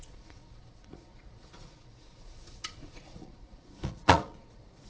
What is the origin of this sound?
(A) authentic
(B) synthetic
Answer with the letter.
B